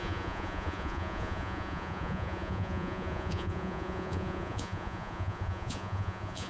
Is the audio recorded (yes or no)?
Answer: no